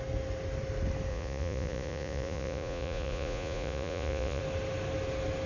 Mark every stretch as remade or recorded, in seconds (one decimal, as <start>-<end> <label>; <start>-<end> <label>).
0.0-1.1 recorded; 1.1-4.4 remade; 4.4-5.5 recorded